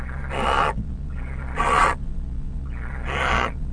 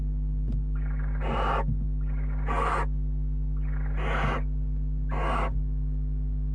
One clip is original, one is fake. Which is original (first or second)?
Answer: second